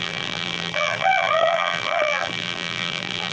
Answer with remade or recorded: remade